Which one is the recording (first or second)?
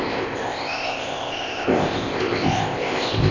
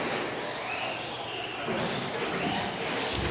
second